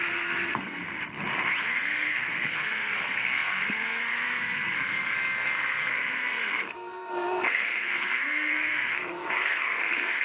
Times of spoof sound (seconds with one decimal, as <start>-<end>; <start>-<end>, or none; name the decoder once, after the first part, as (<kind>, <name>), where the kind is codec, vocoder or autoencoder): 0.0-0.8 (codec, SNAC); 1.6-10.2